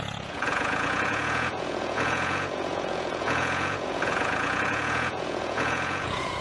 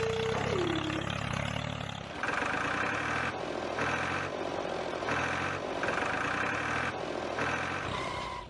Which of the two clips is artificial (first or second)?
first